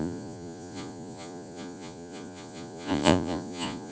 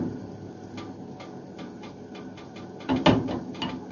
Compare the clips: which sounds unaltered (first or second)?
second